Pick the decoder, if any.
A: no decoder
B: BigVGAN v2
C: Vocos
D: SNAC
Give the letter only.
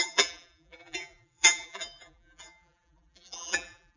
B